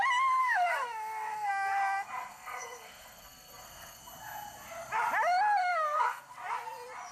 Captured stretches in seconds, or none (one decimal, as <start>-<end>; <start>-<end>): 0.0-0.4; 1.5-2.3; 4.0-5.6; 6.2-7.1